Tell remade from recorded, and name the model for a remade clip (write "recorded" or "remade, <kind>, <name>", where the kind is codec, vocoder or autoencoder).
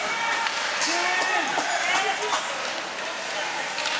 recorded